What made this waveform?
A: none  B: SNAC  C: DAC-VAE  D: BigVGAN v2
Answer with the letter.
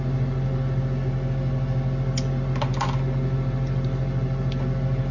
A